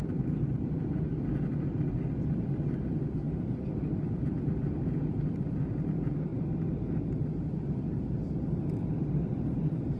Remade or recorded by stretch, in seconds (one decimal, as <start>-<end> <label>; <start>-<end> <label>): 0.0-10.0 recorded